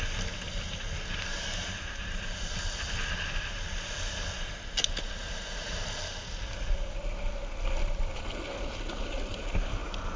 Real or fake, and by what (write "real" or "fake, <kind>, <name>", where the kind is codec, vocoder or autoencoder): real